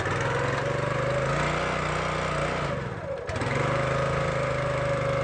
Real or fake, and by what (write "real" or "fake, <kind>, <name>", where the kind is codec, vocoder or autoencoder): real